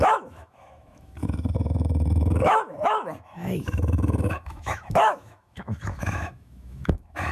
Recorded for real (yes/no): no